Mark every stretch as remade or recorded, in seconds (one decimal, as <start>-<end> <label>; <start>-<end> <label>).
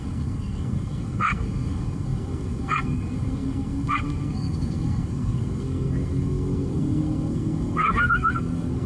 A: 0.0-8.9 remade